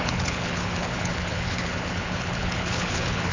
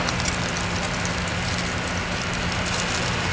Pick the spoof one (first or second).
first